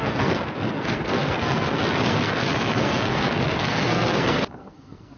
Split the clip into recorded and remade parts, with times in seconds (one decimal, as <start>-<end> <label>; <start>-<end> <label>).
0.0-5.2 remade